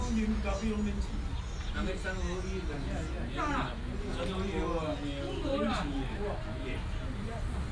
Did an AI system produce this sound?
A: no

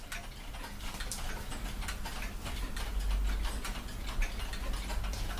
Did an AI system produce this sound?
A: no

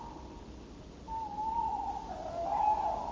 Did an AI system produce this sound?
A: no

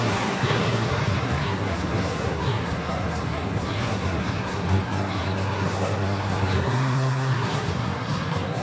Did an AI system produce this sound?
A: yes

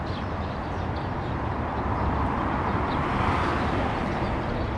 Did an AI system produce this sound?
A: no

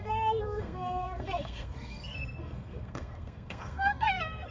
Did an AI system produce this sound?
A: yes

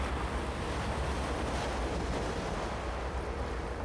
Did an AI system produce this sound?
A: no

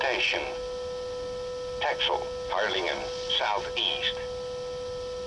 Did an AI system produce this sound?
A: no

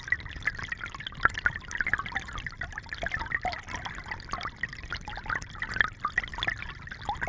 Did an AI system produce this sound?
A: no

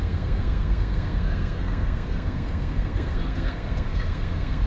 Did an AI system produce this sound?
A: yes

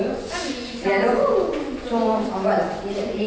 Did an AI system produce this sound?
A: yes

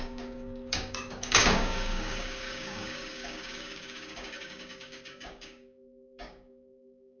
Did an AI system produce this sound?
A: yes